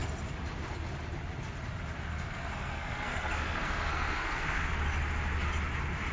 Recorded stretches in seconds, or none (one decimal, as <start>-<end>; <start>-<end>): 0.0-2.1; 4.8-6.1